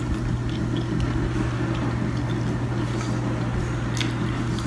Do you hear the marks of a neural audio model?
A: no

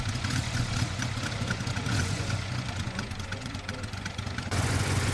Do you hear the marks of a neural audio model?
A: yes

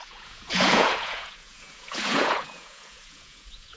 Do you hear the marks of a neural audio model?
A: yes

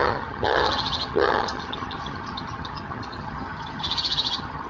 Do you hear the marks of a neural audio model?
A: yes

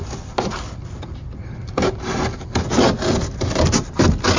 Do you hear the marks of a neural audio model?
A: no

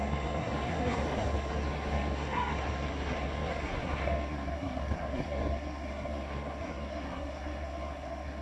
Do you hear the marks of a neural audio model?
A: yes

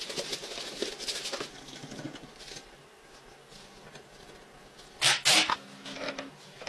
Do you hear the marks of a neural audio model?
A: no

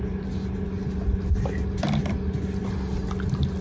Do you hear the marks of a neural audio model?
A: no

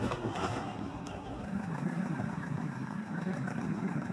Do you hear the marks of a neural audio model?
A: yes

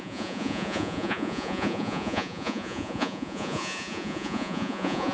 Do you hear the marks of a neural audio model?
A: yes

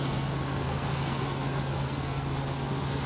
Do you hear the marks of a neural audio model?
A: yes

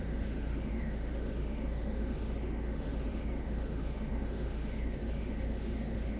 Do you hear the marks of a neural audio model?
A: yes